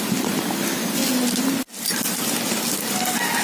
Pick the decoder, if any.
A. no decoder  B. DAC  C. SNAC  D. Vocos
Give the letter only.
A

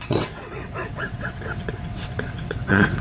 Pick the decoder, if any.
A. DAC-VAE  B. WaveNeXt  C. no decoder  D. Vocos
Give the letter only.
B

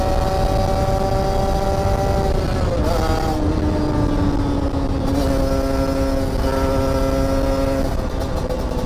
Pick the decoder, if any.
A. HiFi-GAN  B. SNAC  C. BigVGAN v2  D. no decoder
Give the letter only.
D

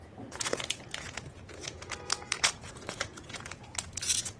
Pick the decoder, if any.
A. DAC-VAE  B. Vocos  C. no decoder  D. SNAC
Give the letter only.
B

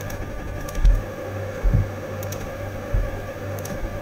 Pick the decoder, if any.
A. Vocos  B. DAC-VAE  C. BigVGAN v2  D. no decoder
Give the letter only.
B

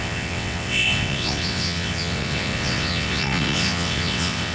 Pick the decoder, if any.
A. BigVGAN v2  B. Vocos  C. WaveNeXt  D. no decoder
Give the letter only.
C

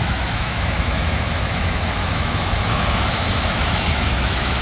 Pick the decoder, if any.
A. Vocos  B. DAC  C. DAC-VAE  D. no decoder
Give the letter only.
C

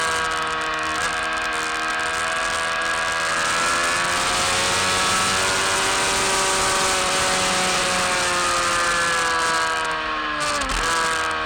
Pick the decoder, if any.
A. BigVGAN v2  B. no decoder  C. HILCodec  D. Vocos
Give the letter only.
B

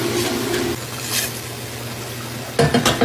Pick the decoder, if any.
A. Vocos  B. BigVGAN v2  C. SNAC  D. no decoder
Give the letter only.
D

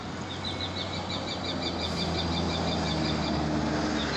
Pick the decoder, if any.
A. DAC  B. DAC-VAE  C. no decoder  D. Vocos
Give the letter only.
C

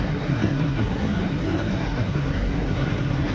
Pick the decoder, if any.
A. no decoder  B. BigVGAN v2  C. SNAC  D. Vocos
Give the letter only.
C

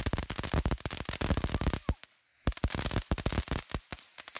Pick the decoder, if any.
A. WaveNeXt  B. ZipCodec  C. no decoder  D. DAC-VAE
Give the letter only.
C